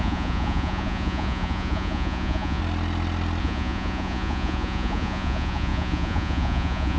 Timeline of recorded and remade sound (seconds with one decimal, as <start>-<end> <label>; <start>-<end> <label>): 0.0-2.6 remade; 2.6-3.4 recorded; 3.4-7.0 remade